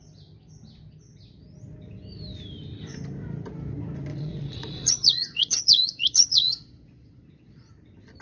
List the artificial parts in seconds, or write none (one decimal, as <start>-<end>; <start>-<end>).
4.1-7.7